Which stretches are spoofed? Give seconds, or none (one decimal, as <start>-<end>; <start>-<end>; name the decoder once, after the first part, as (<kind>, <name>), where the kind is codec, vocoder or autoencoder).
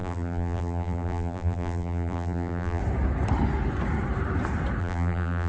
0.0-2.8 (vocoder, BigVGAN v2); 4.8-5.5